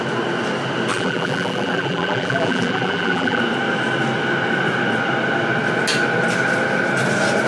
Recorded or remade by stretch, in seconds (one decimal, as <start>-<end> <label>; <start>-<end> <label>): 0.0-0.9 recorded; 0.9-3.4 remade; 3.4-7.5 recorded